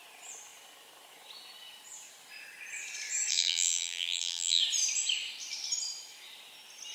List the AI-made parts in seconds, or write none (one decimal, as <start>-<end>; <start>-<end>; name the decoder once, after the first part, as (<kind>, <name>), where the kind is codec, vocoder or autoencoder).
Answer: 3.3-4.6 (vocoder, BigVGAN v2)